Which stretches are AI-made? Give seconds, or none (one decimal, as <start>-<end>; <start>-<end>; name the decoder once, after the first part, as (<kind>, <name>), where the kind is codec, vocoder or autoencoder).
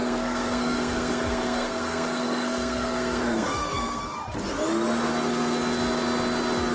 0.0-4.0 (codec, SNAC)